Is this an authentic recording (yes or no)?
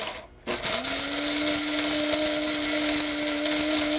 yes